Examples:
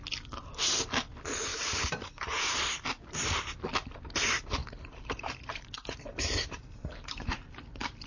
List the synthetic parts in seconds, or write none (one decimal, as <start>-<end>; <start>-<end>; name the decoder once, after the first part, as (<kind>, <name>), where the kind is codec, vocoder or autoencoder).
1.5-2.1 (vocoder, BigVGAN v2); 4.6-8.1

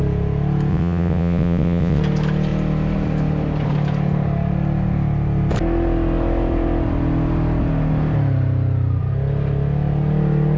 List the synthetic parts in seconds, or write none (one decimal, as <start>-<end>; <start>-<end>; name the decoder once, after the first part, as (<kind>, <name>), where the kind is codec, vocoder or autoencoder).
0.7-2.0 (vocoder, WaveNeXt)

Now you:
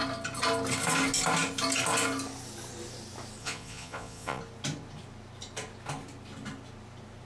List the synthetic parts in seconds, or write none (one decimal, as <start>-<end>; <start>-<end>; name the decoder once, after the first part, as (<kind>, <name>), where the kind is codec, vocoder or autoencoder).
3.4-4.4 (vocoder, Vocos)

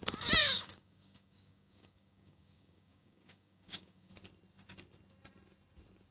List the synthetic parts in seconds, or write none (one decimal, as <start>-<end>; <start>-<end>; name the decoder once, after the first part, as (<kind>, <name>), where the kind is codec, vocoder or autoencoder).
0.4-4.1 (codec, DAC)